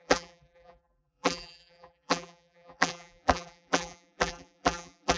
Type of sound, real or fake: fake